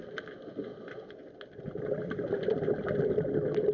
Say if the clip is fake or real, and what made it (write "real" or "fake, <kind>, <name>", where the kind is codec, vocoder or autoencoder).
real